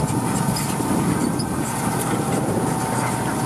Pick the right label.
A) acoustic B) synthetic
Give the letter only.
A